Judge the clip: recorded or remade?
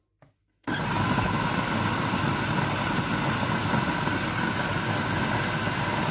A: recorded